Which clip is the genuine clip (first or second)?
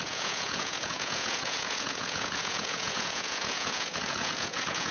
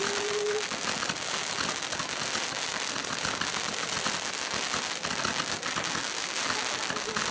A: second